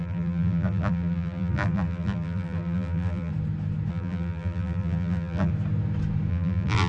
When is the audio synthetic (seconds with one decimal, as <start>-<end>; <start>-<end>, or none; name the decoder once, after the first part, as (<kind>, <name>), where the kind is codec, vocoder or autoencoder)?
0.0-3.3 (vocoder, BigVGAN v2); 3.9-5.5; 6.3-6.9